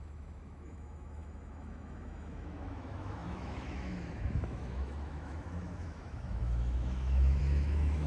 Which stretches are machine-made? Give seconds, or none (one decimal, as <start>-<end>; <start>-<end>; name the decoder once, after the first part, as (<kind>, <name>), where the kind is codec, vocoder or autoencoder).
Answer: 0.0-8.1 (autoencoder, DAC-VAE)